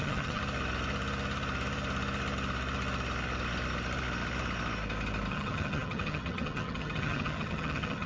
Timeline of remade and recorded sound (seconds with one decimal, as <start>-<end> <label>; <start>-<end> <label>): 0.0-0.4 remade; 0.4-5.3 recorded; 5.3-8.1 remade